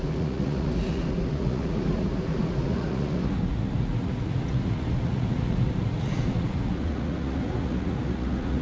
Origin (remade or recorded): remade